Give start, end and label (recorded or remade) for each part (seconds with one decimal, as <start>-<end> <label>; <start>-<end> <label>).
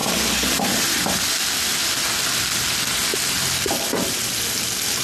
0.0-5.0 recorded